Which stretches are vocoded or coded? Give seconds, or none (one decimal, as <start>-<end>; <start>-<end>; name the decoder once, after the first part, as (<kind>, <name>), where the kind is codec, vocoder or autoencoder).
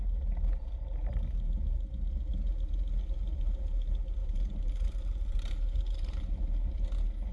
4.2-6.3 (vocoder, BigVGAN v2)